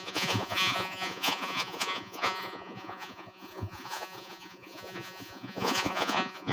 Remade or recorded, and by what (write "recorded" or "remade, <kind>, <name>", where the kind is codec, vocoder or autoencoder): remade, vocoder, Vocos